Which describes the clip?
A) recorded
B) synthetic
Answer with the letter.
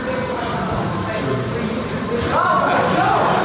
A